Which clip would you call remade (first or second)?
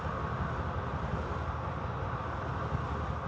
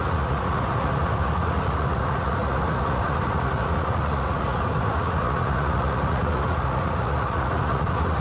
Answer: second